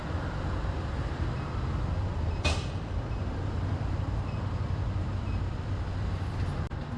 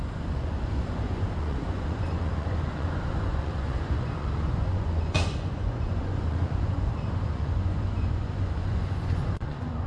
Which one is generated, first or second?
second